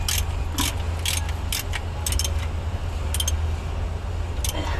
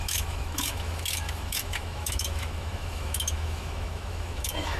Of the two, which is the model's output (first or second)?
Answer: second